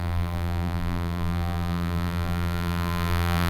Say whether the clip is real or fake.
fake